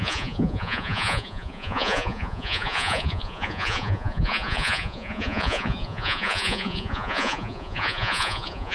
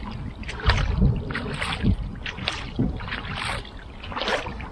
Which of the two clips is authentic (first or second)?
second